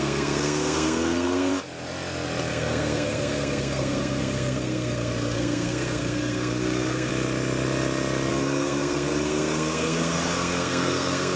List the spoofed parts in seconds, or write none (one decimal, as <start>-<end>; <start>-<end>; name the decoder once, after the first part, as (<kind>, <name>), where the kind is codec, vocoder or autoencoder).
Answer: 0.0-1.5 (codec, SNAC); 2.5-7.1; 8.3-11.4